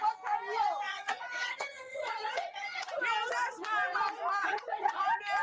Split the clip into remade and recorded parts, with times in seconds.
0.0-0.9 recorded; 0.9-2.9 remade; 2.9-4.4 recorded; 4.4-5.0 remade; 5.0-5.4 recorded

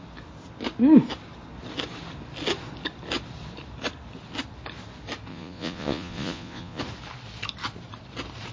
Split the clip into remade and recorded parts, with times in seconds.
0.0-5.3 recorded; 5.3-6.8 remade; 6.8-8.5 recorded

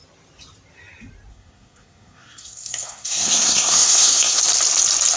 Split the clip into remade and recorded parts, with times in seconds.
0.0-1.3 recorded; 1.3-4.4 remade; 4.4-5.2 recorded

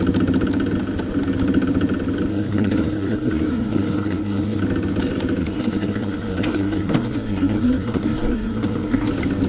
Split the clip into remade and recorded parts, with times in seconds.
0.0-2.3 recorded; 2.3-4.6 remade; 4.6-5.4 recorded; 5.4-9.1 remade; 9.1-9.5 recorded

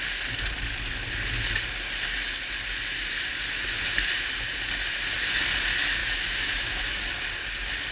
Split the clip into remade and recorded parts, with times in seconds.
0.0-6.0 recorded; 6.0-7.0 remade; 7.0-7.9 recorded

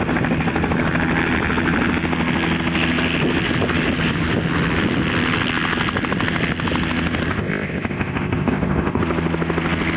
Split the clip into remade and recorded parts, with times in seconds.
0.0-7.3 recorded; 7.3-9.0 remade; 9.0-10.0 recorded